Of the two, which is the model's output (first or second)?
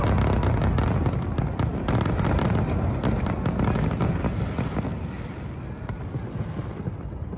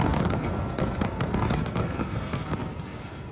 second